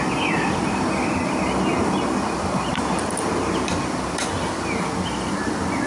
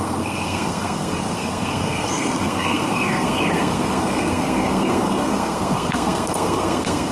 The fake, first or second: second